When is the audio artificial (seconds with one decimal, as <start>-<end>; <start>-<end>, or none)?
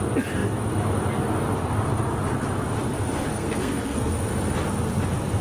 3.3-4.1